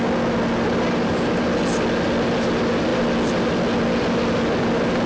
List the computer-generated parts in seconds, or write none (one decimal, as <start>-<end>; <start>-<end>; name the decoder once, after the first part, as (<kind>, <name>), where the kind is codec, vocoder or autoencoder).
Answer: none